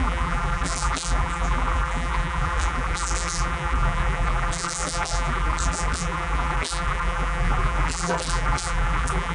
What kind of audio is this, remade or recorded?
remade